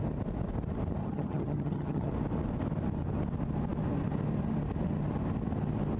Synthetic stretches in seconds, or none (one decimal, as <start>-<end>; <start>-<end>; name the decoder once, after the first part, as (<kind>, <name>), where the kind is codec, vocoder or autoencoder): 1.0-2.1 (vocoder, HiFi-GAN)